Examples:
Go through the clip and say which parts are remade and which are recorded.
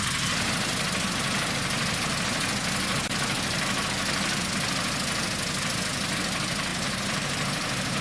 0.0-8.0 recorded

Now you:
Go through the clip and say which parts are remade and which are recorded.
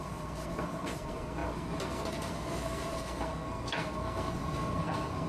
0.0-5.3 remade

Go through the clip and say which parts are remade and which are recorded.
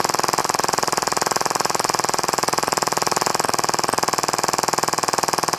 0.0-0.4 recorded; 0.4-3.3 remade; 3.3-5.6 recorded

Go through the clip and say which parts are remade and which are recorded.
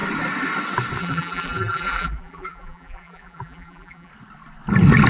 0.0-1.0 recorded; 1.0-4.1 remade; 4.1-5.1 recorded